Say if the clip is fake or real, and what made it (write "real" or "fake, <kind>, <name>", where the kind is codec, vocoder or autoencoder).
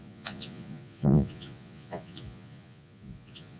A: fake, vocoder, Vocos